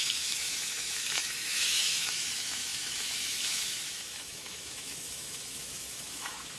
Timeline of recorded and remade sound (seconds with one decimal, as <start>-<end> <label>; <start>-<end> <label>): 0.0-6.6 remade